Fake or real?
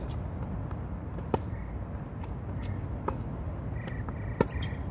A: real